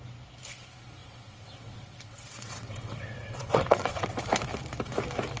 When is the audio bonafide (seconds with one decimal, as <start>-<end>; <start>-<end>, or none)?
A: 0.0-1.0; 4.2-5.4